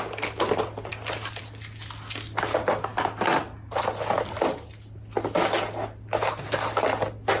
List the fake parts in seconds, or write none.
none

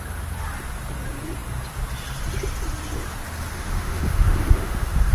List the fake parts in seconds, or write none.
3.5-5.1 (autoencoder, DAC-VAE)

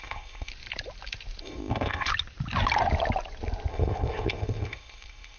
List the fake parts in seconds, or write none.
0.0-0.5 (codec, ZipCodec); 1.4-2.1; 3.7-5.4

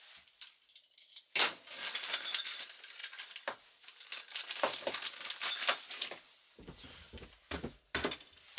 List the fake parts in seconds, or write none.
none

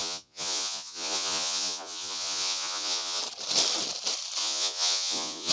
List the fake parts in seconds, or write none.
0.0-3.2 (vocoder, Vocos); 4.4-5.5

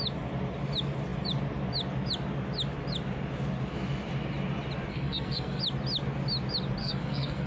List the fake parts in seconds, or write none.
4.9-5.6 (codec, SNAC); 6.8-7.5

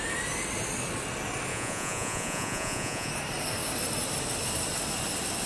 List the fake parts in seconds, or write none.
1.5-3.1 (vocoder, Vocos)